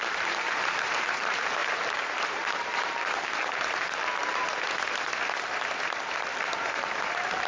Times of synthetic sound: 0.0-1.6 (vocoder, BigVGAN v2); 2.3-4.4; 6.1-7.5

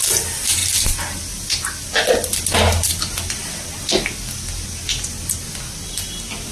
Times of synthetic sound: 0.6-1.2 (vocoder, BigVGAN v2)

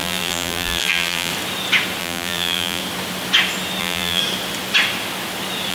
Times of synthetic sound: 0.0-1.3 (vocoder, BigVGAN v2); 2.0-2.8; 3.8-4.2

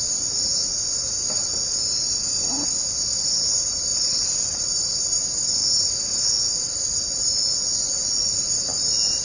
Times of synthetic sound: 3.9-4.6 (vocoder, BigVGAN v2)

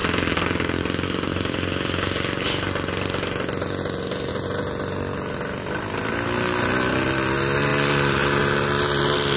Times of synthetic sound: none

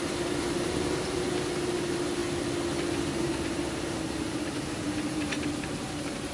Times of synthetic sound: 0.0-2.2 (vocoder, BigVGAN v2); 3.2-6.3

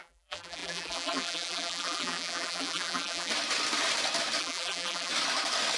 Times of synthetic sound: 0.0-3.3 (vocoder, BigVGAN v2); 4.4-5.1

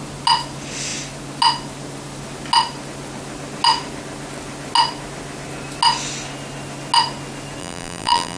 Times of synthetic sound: 7.6-8.4 (vocoder, BigVGAN v2)